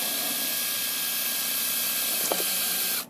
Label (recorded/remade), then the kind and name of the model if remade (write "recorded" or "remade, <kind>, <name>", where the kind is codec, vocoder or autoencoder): recorded